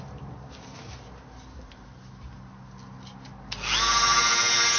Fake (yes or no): no